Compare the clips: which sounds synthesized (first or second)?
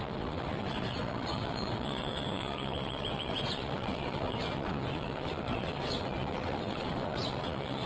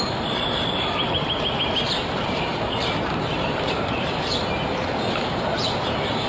first